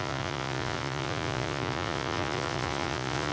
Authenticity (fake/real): fake